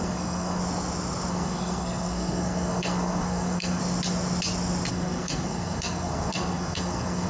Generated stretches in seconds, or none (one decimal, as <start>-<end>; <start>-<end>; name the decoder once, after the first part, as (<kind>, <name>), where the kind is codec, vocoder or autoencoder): 0.0-0.6 (codec, SNAC); 1.3-3.8; 4.9-7.3